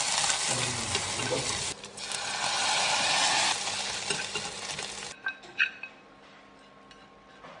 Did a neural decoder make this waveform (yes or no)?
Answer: no